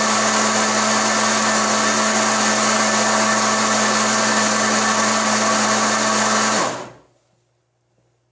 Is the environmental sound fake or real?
real